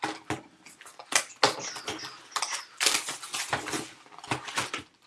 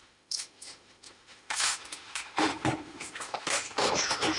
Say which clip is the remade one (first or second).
second